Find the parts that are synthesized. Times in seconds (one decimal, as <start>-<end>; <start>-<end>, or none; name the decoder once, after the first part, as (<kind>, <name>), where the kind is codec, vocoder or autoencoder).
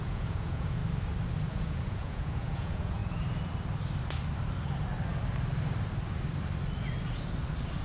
0.0-0.8 (vocoder, Vocos); 1.5-3.0